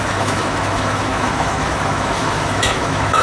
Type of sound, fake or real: fake